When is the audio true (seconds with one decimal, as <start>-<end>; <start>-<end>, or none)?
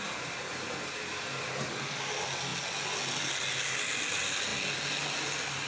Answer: 0.0-5.7